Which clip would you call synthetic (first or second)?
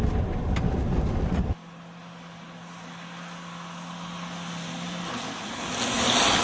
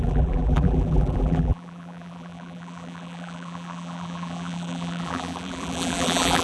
second